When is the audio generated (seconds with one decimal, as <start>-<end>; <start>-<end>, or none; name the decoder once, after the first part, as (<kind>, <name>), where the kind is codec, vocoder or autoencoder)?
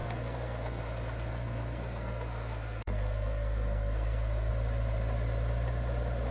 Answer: 0.0-0.8 (codec, SNAC); 1.3-4.5